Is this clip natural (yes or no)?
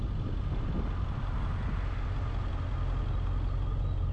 yes